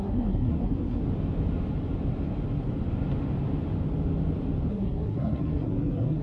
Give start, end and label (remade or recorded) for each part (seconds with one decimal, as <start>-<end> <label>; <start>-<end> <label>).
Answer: 0.0-1.0 remade; 1.0-4.7 recorded; 4.7-6.2 remade